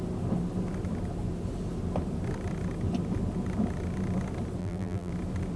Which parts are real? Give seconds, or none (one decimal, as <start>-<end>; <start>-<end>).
0.0-4.6; 5.1-5.6

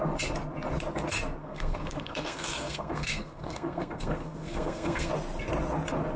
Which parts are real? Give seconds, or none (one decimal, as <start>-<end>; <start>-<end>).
0.0-1.4; 5.1-6.2

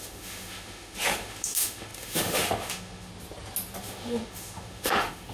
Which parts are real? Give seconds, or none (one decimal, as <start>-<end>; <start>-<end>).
3.1-3.8

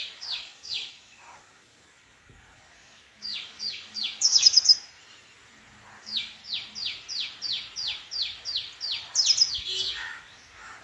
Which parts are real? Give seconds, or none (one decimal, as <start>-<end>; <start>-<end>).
4.7-6.0; 6.4-9.5

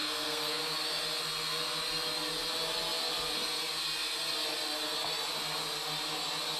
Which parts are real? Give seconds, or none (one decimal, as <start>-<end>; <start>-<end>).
0.6-6.6